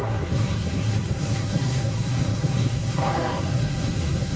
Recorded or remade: remade